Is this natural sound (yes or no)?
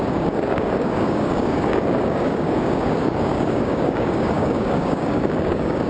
no